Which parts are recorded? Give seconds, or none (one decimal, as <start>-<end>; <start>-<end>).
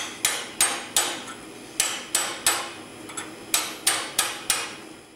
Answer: 0.0-5.2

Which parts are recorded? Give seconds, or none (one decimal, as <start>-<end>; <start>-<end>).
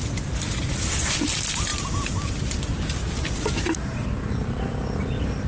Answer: 0.0-5.5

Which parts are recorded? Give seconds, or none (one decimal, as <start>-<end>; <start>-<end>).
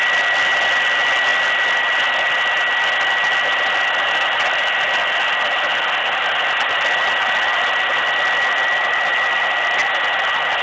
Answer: 0.0-10.6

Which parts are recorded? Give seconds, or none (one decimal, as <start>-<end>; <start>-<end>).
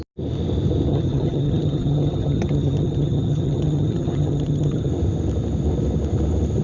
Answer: 0.0-0.9; 4.9-6.6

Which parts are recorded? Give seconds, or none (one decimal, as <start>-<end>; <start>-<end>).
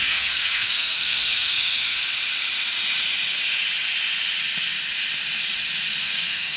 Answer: 2.0-6.0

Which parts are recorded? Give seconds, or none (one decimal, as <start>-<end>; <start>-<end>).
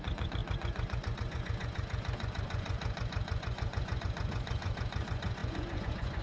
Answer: none